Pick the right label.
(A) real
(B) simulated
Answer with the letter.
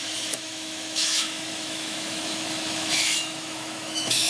B